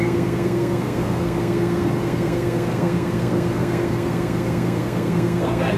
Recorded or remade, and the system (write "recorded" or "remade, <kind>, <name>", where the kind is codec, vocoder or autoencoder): remade, codec, SNAC